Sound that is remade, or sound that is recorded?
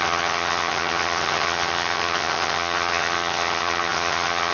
remade